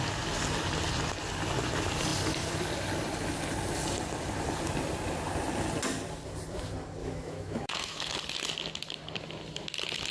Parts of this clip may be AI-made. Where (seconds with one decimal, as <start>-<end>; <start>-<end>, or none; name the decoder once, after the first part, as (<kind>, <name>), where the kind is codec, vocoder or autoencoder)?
7.0-8.2 (autoencoder, DAC-VAE)

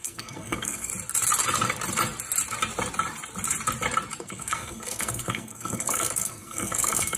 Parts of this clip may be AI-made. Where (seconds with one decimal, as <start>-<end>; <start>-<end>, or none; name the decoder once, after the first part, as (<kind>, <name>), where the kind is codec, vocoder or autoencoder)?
0.0-0.9 (codec, SNAC); 4.2-7.2

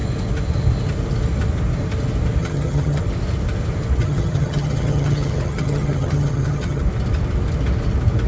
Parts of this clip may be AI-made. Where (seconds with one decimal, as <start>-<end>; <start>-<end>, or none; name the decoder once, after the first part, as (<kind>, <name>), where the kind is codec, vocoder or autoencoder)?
2.4-3.0 (vocoder, HiFi-GAN); 4.0-6.8

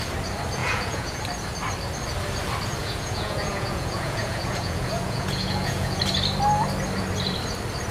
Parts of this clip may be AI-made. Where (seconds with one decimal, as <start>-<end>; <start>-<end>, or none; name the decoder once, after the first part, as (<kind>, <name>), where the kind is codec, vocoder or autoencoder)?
0.6-1.2 (vocoder, Vocos); 2.8-6.0

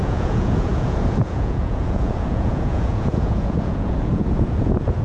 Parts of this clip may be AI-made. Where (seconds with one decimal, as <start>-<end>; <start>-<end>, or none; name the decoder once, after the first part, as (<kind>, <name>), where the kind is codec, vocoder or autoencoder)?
0.0-5.0 (vocoder, Vocos)

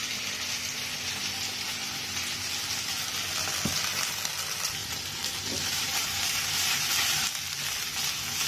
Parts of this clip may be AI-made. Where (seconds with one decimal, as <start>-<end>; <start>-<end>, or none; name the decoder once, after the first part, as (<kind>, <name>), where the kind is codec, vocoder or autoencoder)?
4.8-7.3 (vocoder, BigVGAN v2)

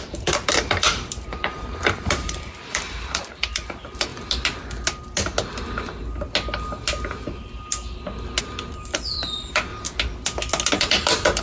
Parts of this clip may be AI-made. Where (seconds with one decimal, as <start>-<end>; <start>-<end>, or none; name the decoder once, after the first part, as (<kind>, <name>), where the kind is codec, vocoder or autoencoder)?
0.0-4.1 (vocoder, BigVGAN v2); 8.4-9.7; 10.8-11.4

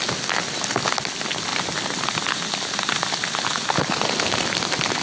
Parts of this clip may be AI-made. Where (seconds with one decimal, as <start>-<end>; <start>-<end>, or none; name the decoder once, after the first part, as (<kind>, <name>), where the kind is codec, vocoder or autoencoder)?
none